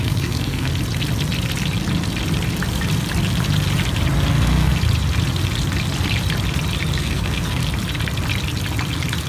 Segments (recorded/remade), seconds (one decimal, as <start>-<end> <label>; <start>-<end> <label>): 0.0-0.7 remade; 0.7-4.3 recorded; 4.3-4.7 remade; 4.7-7.0 recorded; 7.0-7.6 remade; 7.6-9.3 recorded